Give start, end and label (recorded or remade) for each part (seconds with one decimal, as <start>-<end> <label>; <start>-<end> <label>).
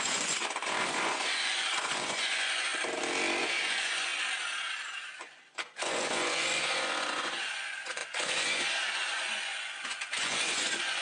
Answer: 0.0-2.7 remade; 2.7-3.4 recorded; 3.4-4.1 remade; 4.1-5.2 recorded; 5.2-11.0 remade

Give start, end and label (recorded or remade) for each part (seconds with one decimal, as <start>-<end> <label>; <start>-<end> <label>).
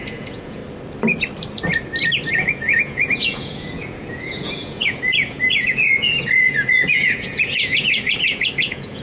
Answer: 0.0-0.6 remade; 0.6-2.3 recorded; 2.3-9.0 remade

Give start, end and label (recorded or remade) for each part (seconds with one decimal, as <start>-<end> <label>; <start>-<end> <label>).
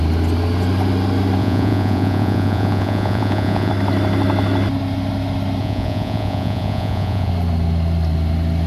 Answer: 0.0-1.4 recorded; 1.4-3.7 remade; 3.7-5.6 recorded; 5.6-7.3 remade; 7.3-8.7 recorded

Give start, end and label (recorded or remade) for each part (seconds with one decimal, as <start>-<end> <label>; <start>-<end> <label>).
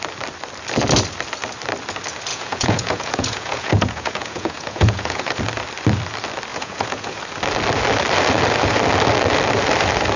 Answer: 0.0-2.3 recorded; 2.3-5.4 remade; 5.4-6.5 recorded; 6.5-7.2 remade; 7.2-10.2 recorded